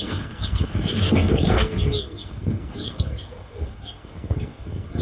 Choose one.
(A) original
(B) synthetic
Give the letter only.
B